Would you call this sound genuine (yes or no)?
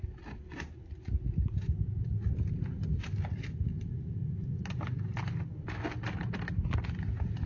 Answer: yes